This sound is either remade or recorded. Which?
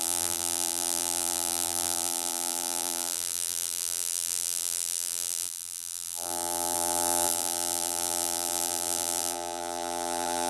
remade